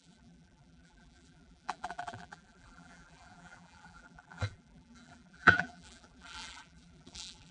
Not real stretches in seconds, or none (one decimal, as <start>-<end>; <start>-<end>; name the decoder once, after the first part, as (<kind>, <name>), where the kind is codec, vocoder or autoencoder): 0.0-7.5 (vocoder, BigVGAN v2)